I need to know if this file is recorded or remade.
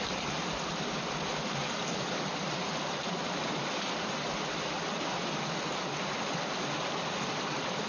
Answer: recorded